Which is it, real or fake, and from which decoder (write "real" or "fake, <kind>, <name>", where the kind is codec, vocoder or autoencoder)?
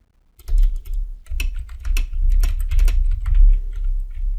real